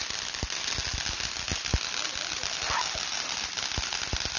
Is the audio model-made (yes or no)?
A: no